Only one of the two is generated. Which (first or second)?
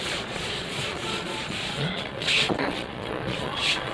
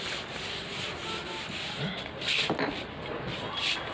first